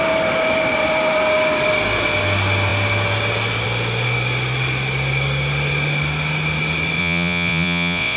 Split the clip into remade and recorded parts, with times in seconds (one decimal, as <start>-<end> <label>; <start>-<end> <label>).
0.0-7.0 recorded; 7.0-8.2 remade